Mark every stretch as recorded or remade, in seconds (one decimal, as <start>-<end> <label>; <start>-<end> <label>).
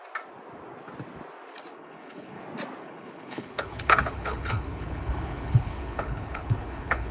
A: 0.0-1.7 recorded; 1.7-2.4 remade; 2.4-2.8 recorded; 2.8-7.1 remade